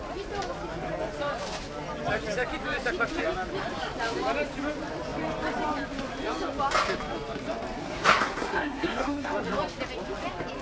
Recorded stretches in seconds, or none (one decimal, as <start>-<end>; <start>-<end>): 0.0-7.8; 9.3-10.6

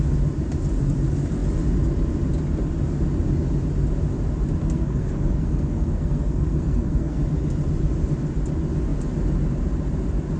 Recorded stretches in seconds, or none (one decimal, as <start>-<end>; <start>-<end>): 0.0-4.6; 7.2-10.4

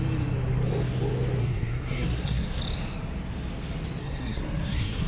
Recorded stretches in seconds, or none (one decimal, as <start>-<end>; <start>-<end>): 0.0-1.4; 2.6-4.0

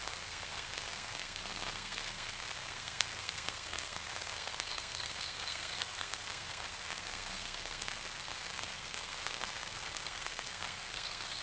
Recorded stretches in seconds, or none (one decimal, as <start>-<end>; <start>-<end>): none